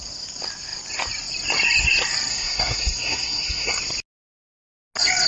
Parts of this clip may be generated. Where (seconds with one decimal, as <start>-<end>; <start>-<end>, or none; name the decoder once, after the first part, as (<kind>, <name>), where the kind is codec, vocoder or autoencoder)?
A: 2.3-3.8 (codec, SNAC)